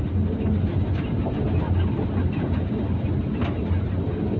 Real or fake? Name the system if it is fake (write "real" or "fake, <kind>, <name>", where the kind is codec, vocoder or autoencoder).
real